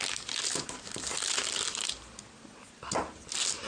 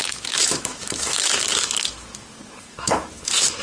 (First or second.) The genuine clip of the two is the first